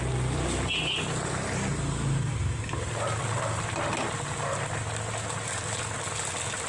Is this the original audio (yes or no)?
yes